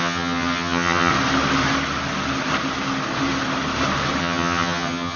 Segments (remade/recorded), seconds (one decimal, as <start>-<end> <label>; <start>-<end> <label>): 0.0-1.1 remade; 1.1-4.2 recorded; 4.2-5.2 remade